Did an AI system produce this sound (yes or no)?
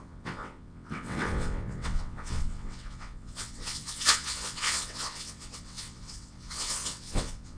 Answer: yes